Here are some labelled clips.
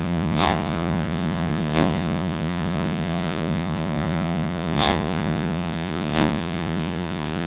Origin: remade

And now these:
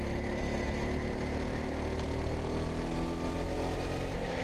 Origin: recorded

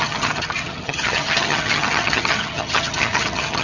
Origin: remade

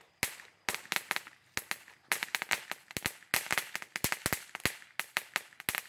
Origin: recorded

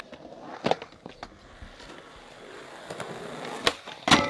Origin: recorded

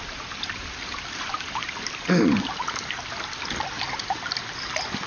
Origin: recorded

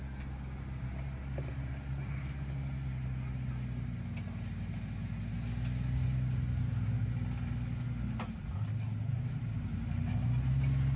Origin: recorded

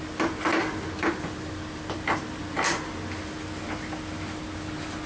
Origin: recorded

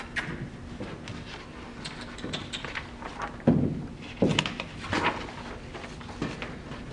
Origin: recorded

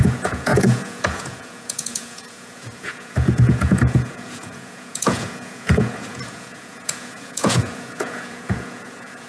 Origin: remade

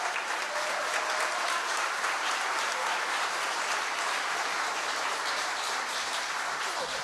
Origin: remade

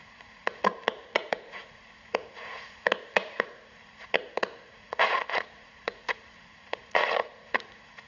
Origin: remade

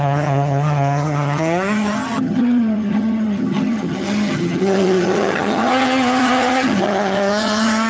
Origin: remade